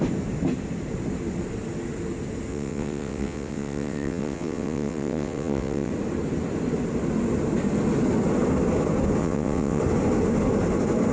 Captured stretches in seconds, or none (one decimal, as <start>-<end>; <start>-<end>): 0.0-2.5; 5.9-9.2; 9.8-11.1